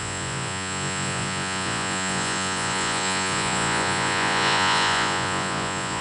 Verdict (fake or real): fake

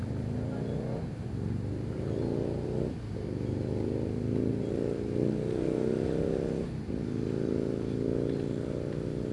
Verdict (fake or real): real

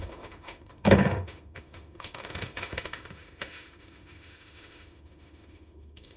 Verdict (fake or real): fake